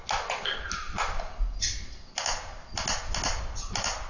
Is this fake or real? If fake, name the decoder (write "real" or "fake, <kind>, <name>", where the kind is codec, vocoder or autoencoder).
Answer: real